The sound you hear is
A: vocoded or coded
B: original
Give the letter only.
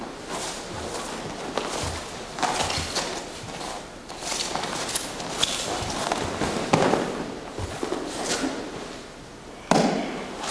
B